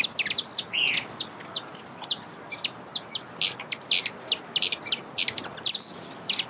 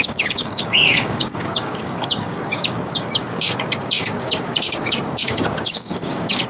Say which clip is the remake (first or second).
second